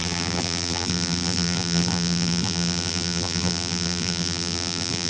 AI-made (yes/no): yes